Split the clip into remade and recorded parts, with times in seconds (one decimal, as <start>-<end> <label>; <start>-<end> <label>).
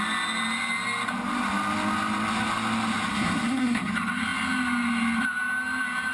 0.0-3.1 recorded; 3.1-3.9 remade; 3.9-6.1 recorded